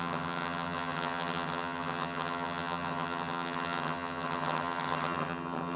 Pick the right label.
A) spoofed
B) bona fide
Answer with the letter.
A